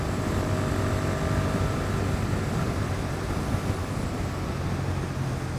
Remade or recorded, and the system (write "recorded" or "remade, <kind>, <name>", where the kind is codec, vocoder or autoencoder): recorded